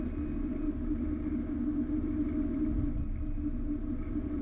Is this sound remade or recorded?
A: recorded